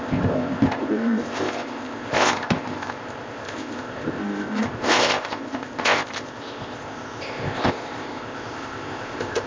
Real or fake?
fake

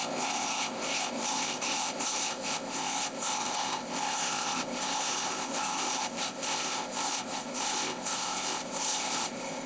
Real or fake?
fake